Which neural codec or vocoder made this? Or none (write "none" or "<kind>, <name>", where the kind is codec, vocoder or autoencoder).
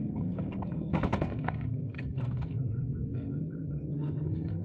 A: codec, SNAC